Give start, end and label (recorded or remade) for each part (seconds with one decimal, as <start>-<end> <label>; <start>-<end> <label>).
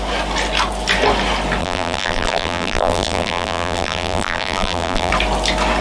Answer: 0.0-1.6 recorded; 1.6-5.1 remade; 5.1-5.8 recorded